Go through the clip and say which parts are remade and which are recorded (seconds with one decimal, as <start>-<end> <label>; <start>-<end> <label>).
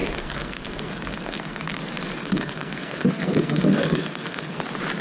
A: 0.0-1.8 remade; 1.8-2.2 recorded; 2.2-4.6 remade; 4.6-5.0 recorded